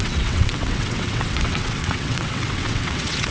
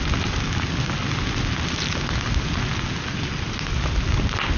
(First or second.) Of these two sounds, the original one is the second